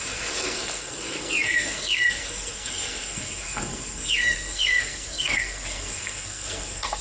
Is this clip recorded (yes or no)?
no